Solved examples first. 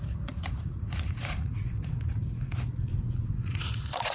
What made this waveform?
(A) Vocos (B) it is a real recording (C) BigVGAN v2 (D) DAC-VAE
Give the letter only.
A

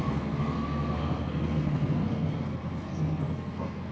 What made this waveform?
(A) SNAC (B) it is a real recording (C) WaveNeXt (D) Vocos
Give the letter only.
A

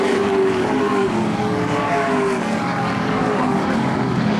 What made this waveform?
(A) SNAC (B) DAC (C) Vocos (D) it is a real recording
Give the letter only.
B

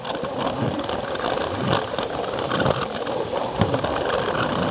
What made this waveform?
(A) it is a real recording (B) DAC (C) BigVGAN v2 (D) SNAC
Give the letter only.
A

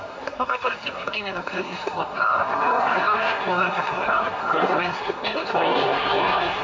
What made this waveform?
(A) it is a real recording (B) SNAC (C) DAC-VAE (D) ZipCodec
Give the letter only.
B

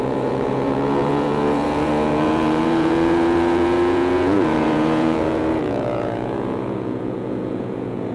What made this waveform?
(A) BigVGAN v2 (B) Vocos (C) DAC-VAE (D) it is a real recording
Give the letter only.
B